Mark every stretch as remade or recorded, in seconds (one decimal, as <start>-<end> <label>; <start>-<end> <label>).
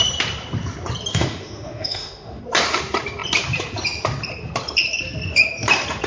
0.0-1.1 recorded; 1.1-2.4 remade; 2.4-6.1 recorded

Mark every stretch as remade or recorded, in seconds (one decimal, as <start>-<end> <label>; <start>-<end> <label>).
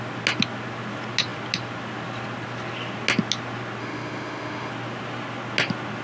0.0-3.8 recorded; 3.8-4.7 remade; 4.7-6.0 recorded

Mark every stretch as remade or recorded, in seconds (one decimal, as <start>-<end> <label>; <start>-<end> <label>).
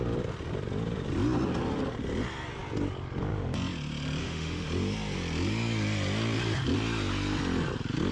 0.0-4.2 recorded; 4.2-4.7 remade; 4.7-8.1 recorded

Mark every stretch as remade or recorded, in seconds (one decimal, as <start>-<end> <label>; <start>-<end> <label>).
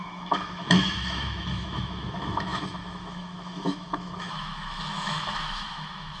0.0-6.2 remade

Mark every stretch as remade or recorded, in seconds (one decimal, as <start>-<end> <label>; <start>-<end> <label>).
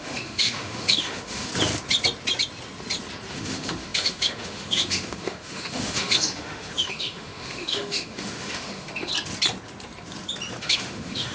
0.0-1.5 remade; 1.5-3.3 recorded; 3.3-9.1 remade; 9.1-10.6 recorded; 10.6-11.3 remade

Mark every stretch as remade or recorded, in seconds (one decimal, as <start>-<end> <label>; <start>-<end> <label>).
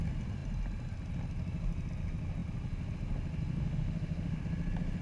0.0-3.6 recorded; 3.6-4.4 remade; 4.4-5.0 recorded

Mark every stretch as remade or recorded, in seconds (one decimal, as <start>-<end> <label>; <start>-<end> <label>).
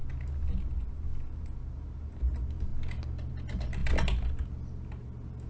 0.0-5.5 recorded